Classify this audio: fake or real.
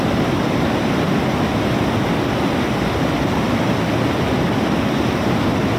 real